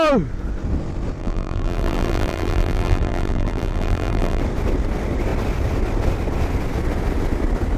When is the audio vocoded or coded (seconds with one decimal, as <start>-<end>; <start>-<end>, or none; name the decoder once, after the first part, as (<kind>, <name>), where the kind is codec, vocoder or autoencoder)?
1.2-4.4 (vocoder, BigVGAN v2)